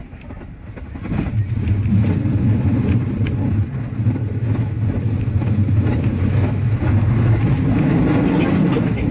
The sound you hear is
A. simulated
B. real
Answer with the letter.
B